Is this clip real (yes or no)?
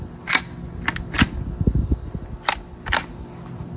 yes